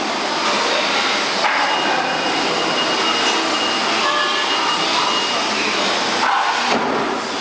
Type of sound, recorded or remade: recorded